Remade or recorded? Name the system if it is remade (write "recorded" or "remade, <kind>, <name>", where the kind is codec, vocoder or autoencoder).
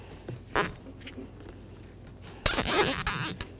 recorded